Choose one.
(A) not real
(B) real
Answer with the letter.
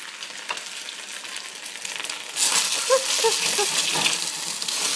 B